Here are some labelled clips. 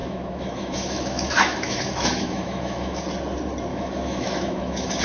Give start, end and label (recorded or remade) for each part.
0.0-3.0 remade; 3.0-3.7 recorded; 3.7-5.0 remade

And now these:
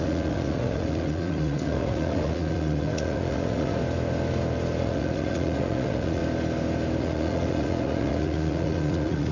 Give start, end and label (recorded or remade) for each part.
0.0-3.8 remade; 3.8-4.8 recorded; 4.8-6.2 remade; 6.2-7.0 recorded; 7.0-9.3 remade

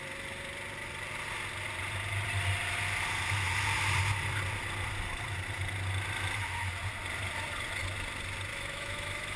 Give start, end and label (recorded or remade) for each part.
0.0-8.5 recorded; 8.5-9.4 remade

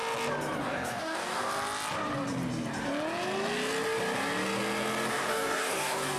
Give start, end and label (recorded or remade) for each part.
0.0-0.6 recorded; 0.6-1.5 remade; 1.5-5.1 recorded; 5.1-6.2 remade

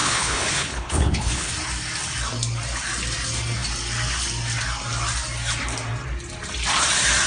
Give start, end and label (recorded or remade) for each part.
0.0-1.5 remade; 1.5-7.3 recorded

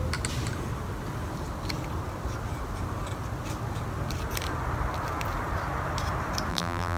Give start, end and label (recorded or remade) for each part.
0.0-6.5 recorded; 6.5-7.0 remade